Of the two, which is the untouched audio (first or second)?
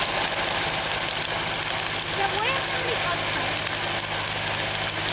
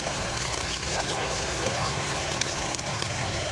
first